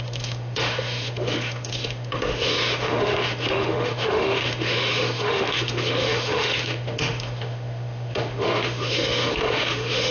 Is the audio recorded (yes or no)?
no